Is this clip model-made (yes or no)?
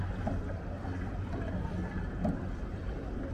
no